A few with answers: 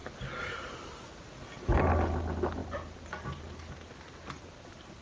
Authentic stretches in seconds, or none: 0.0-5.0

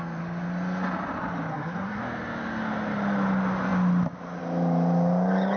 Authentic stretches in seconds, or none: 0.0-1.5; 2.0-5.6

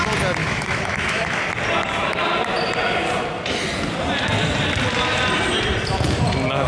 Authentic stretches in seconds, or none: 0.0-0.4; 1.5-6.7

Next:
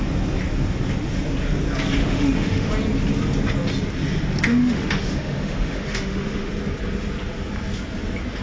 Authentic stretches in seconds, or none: 0.0-2.0; 2.7-4.5; 6.5-8.4